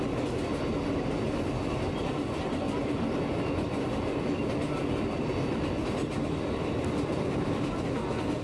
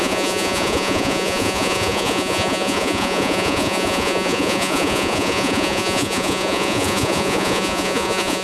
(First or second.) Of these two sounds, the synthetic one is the second